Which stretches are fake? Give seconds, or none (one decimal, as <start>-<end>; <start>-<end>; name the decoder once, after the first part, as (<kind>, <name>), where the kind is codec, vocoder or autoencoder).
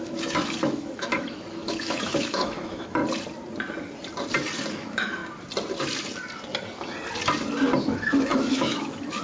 0.0-3.0 (autoencoder, DAC-VAE); 4.7-5.2; 7.8-9.2